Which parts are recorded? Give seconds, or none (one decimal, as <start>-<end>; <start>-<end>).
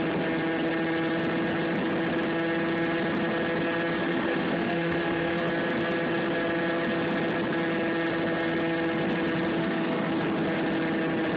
0.0-4.0; 5.4-9.6; 10.1-11.4